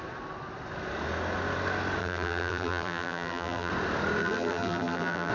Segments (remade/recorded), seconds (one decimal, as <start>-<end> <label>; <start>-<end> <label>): 0.0-2.0 recorded; 2.0-3.7 remade; 3.7-4.2 recorded; 4.2-5.3 remade